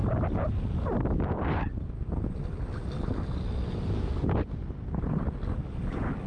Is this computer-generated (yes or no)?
no